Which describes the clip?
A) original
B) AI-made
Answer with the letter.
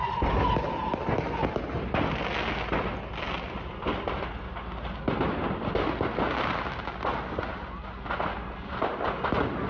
A